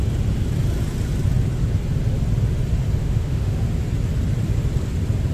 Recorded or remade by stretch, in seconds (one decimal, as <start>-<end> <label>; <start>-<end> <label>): 0.0-3.0 recorded; 3.0-3.6 remade; 3.6-5.3 recorded